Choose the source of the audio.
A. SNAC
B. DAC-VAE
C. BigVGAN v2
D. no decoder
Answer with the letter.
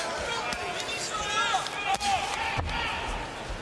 D